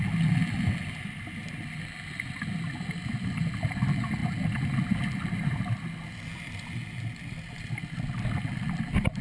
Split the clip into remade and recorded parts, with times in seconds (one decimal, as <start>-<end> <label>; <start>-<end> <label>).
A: 0.0-9.2 recorded